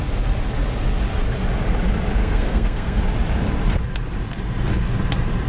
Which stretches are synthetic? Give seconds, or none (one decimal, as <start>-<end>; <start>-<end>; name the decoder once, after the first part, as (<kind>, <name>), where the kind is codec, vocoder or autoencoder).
2.2-3.0 (codec, SNAC)